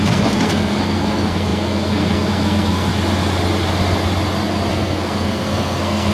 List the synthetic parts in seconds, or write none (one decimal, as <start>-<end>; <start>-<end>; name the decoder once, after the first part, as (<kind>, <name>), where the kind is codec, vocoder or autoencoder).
0.0-2.9 (codec, SNAC); 4.7-6.1